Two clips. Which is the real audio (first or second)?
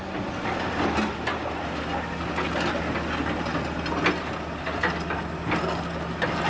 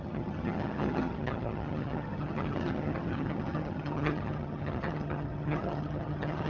first